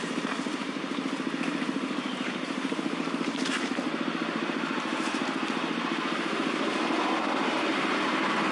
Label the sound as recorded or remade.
remade